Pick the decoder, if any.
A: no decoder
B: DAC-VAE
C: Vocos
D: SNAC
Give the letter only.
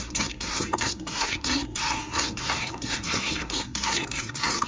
D